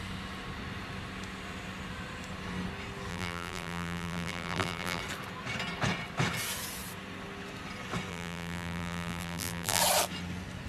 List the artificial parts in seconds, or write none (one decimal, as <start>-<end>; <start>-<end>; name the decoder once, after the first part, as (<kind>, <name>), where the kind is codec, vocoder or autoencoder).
3.1-5.0 (vocoder, BigVGAN v2); 8.1-9.8